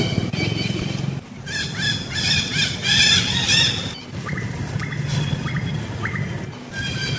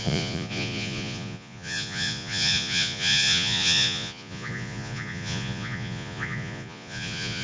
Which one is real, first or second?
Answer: first